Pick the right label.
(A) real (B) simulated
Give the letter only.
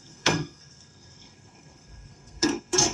B